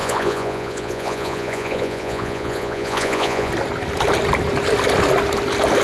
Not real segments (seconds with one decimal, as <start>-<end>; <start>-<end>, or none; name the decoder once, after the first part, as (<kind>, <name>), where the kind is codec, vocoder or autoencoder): 0.0-3.5 (vocoder, Vocos)